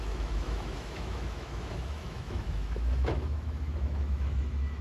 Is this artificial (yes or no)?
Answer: yes